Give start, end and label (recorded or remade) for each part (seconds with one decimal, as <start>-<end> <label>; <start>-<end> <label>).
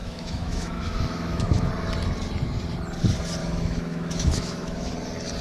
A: 0.0-1.7 remade; 1.7-3.4 recorded; 3.4-4.9 remade; 4.9-5.4 recorded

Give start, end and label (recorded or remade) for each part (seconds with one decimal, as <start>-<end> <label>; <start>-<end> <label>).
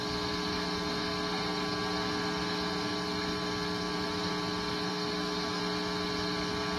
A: 0.0-4.9 recorded; 4.9-5.6 remade; 5.6-6.8 recorded